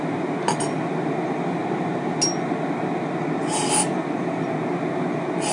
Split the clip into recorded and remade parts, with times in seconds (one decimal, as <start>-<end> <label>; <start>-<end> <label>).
0.0-5.5 recorded